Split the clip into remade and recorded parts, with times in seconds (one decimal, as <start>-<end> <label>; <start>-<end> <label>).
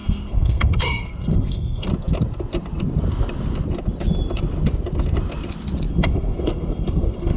0.0-1.9 remade; 1.9-5.9 recorded; 5.9-7.4 remade